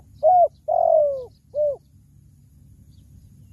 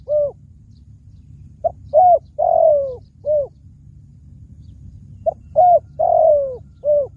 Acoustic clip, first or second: first